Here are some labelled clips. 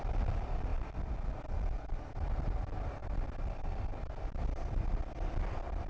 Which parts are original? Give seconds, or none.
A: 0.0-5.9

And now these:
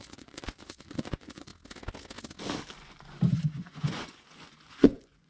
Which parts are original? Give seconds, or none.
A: 1.5-2.8

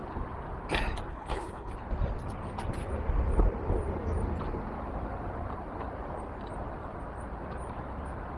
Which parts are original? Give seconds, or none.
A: 0.0-1.1; 1.7-8.4

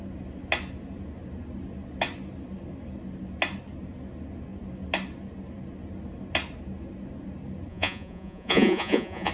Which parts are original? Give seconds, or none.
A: 0.0-7.7

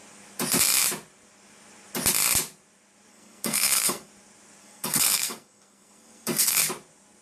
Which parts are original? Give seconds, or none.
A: 0.0-3.1; 4.1-4.6; 6.6-7.2

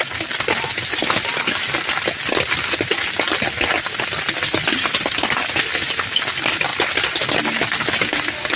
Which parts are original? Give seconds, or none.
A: 0.0-8.6